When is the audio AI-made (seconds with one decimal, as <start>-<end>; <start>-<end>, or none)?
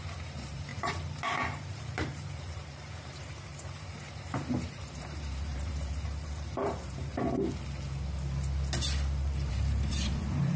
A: 0.0-7.1; 9.5-10.6